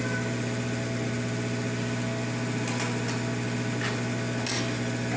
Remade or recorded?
recorded